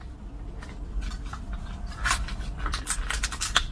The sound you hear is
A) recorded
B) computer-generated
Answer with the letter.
B